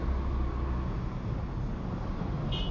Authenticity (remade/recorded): recorded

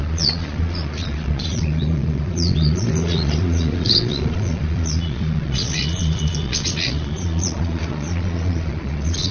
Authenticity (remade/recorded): remade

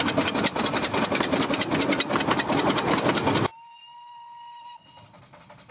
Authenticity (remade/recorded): recorded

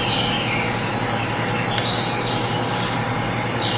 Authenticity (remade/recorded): recorded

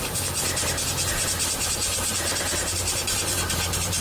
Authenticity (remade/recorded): remade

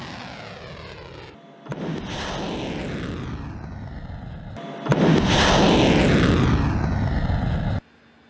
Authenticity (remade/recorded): recorded